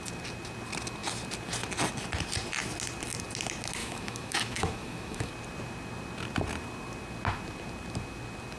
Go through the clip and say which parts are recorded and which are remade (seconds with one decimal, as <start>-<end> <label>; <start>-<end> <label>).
0.0-3.8 recorded; 3.8-5.3 remade; 5.3-8.6 recorded